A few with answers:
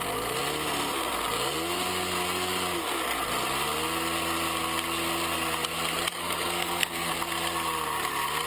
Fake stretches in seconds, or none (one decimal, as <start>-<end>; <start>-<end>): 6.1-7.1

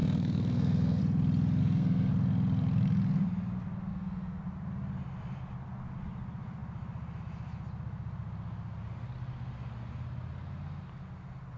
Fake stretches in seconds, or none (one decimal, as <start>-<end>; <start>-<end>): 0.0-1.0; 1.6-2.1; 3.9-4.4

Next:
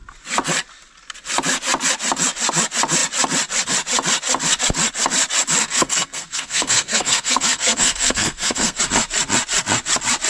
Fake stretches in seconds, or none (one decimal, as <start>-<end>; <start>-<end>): 5.6-8.8

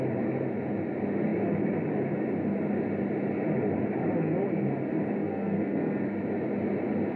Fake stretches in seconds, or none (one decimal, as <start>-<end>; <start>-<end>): 5.2-6.2